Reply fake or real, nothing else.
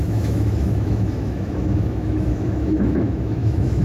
fake